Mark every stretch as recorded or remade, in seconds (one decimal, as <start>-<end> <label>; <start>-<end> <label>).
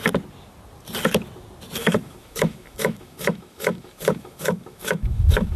0.0-1.8 recorded; 1.8-5.6 remade